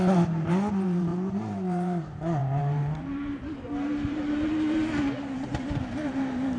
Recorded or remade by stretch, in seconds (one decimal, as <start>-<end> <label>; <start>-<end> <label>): 0.0-4.8 remade; 4.8-5.9 recorded; 5.9-6.6 remade

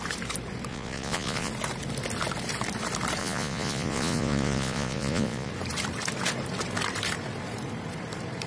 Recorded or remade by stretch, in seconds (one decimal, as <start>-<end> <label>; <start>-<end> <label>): 0.0-0.7 recorded; 0.7-1.5 remade; 1.5-3.2 recorded; 3.2-5.5 remade; 5.5-8.5 recorded

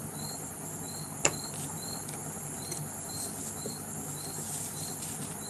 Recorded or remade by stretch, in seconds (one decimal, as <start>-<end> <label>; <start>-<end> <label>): 0.0-5.5 recorded

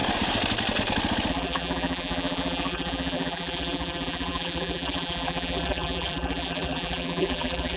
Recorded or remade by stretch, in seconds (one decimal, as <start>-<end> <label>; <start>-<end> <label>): 0.0-1.3 recorded; 1.3-7.8 remade